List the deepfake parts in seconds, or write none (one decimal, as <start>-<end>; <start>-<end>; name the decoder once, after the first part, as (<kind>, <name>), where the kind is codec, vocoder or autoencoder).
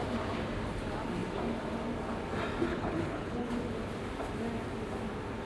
2.7-3.5 (codec, HILCodec)